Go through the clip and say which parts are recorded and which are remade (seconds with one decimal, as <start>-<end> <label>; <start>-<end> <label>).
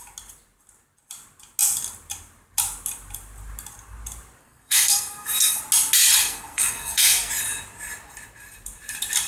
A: 0.0-4.4 recorded; 4.4-5.6 remade; 5.6-6.2 recorded; 6.2-7.3 remade; 7.3-9.3 recorded